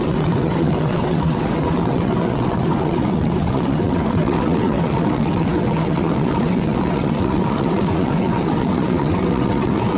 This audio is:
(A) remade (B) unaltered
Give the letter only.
A